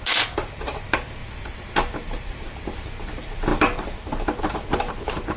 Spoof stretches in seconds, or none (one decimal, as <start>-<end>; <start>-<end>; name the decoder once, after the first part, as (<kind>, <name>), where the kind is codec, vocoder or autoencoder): 1.2-2.8 (vocoder, BigVGAN v2)